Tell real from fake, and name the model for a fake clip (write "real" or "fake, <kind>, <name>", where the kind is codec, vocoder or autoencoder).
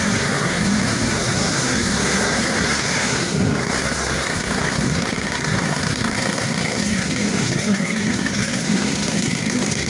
fake, codec, SNAC